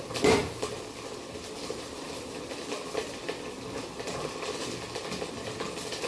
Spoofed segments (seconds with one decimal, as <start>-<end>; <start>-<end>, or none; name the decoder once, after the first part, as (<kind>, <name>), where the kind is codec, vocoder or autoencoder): none